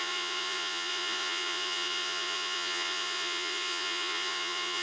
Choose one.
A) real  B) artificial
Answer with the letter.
B